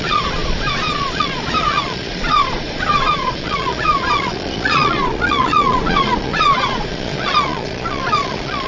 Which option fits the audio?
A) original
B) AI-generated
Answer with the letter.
B